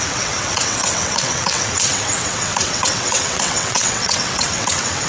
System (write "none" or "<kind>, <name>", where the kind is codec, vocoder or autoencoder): vocoder, WaveNeXt